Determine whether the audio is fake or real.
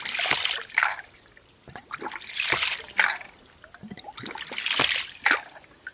fake